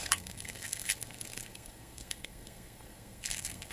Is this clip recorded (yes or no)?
no